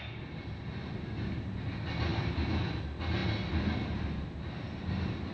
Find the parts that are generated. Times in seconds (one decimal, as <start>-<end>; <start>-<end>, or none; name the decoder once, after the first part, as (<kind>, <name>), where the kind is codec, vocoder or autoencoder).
2.1-2.8 (vocoder, BigVGAN v2)